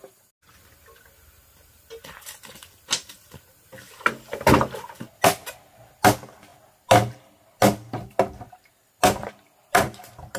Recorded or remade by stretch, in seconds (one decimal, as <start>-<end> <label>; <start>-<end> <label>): 0.0-10.4 recorded